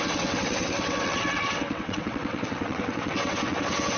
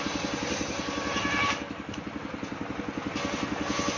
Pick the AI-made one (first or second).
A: first